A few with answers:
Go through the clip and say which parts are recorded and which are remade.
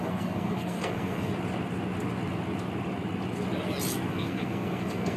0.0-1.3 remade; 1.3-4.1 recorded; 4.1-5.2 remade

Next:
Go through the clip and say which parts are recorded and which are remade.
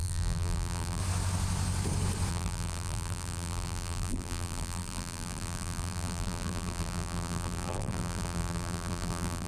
0.0-1.0 remade; 1.0-2.3 recorded; 2.3-9.5 remade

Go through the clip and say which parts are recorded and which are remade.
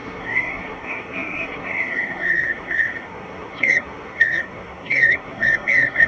0.0-6.1 remade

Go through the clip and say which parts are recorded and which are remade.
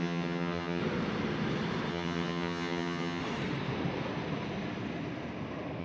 0.0-0.8 remade; 0.8-1.9 recorded; 1.9-3.2 remade; 3.2-5.8 recorded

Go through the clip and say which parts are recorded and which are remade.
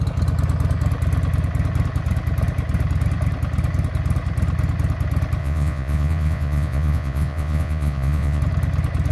0.0-5.4 recorded; 5.4-8.4 remade; 8.4-9.1 recorded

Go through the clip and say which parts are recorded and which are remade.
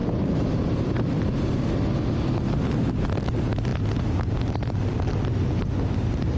0.0-6.4 recorded